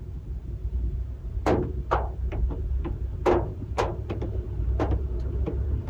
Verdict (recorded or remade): remade